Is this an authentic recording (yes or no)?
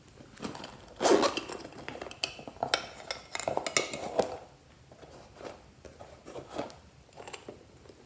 yes